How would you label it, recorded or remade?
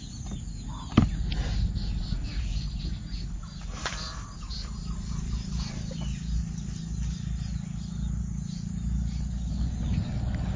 recorded